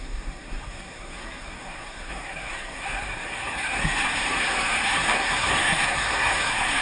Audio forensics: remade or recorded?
remade